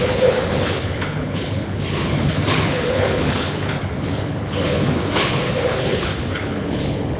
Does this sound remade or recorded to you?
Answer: remade